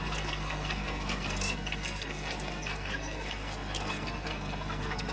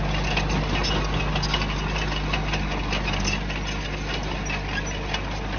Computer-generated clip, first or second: first